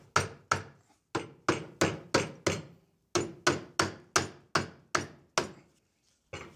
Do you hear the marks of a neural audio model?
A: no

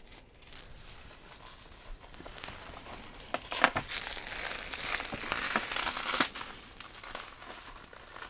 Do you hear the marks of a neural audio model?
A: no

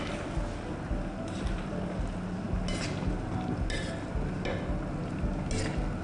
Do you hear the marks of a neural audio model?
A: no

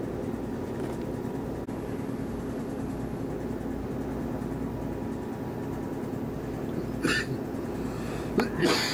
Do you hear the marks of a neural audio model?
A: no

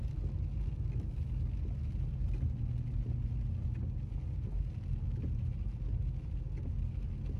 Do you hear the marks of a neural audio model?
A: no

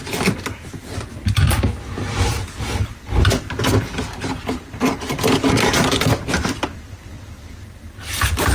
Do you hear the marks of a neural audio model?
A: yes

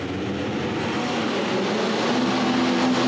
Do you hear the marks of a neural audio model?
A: no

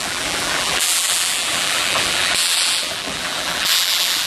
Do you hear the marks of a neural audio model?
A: yes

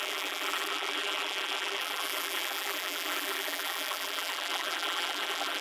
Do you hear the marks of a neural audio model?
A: yes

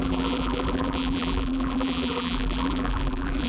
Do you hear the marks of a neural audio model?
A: yes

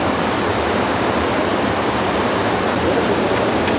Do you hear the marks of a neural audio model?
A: no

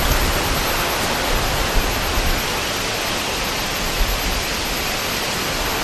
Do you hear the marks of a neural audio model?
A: no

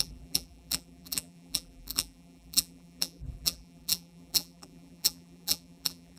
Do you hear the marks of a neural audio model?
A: yes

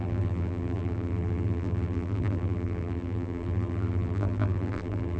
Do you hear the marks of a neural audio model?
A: yes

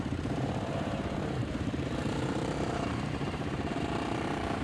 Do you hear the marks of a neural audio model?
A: yes